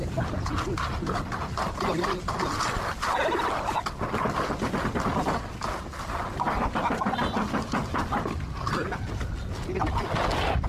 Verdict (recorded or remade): recorded